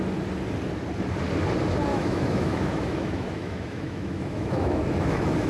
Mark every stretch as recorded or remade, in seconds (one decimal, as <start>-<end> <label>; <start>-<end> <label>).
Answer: 0.0-1.9 recorded; 1.9-5.5 remade

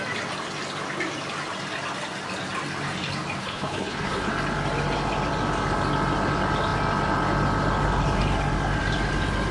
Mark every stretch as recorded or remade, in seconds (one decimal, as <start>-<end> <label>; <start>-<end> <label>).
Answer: 0.0-3.4 recorded; 3.4-4.3 remade; 4.3-9.5 recorded